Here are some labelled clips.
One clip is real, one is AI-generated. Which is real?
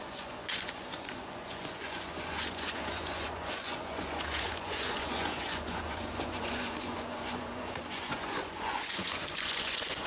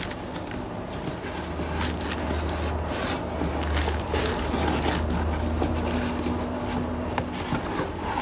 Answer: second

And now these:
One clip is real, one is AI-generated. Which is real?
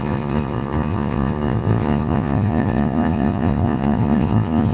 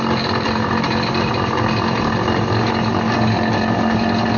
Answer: second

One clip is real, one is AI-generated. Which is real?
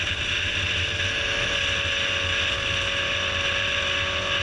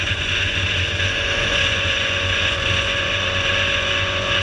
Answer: first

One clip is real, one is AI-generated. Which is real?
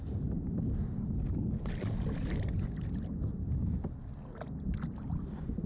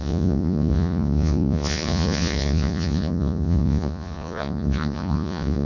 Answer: first